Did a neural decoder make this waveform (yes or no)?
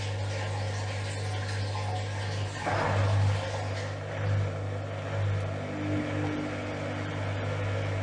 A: no